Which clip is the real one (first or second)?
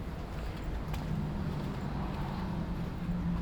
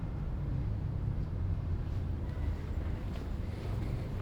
first